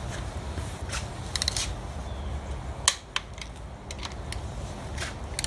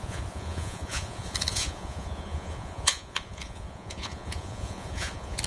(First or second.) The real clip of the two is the first